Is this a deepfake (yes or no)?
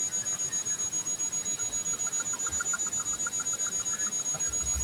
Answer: no